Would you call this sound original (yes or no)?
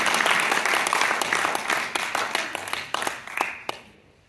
yes